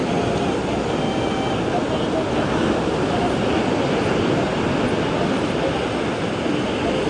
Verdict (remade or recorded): recorded